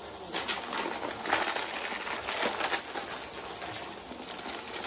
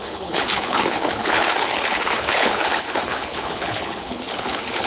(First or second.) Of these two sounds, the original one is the first